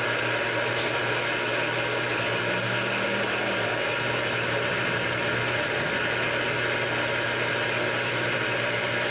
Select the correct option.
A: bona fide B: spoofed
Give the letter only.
A